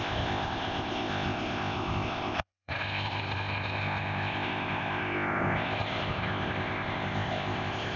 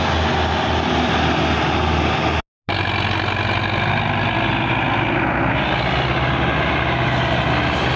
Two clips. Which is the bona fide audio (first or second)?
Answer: second